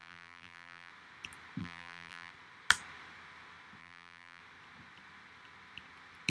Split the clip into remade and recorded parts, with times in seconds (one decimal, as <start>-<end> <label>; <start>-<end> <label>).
0.0-0.9 remade; 0.9-1.6 recorded; 1.6-2.3 remade; 2.3-3.8 recorded; 3.8-4.4 remade; 4.4-6.3 recorded